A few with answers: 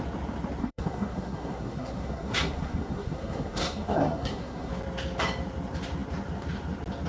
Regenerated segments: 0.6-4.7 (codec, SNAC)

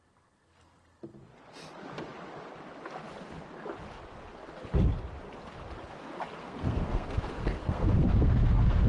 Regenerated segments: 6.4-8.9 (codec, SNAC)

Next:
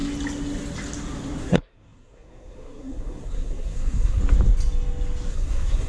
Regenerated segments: 1.4-4.2 (codec, SNAC); 5.3-5.9

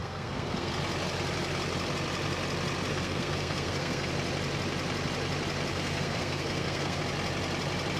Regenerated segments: 0.0-0.7 (codec, SNAC); 2.9-4.1; 5.7-7.0

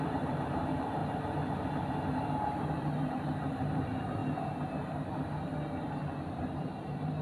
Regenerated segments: 0.0-1.0 (vocoder, BigVGAN v2); 2.7-4.2; 6.2-7.2

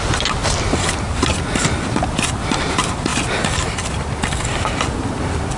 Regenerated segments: 0.4-2.0 (vocoder, BigVGAN v2); 3.1-3.9

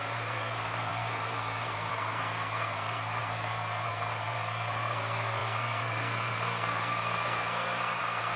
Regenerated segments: 0.0-8.4 (codec, SNAC)

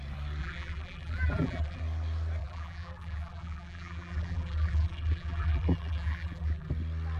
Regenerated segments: 0.4-1.8 (vocoder, BigVGAN v2); 2.4-6.7